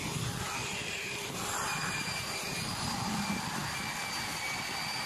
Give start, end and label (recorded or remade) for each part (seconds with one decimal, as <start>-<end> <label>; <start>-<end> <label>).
0.0-0.6 recorded; 0.6-3.1 remade; 3.1-5.1 recorded